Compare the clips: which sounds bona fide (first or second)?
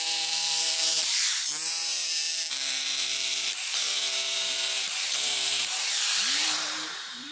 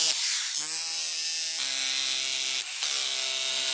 second